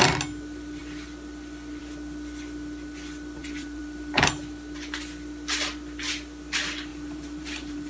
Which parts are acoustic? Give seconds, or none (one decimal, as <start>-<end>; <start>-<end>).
0.0-3.4; 4.3-6.9